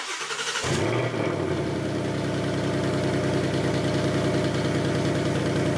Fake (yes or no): no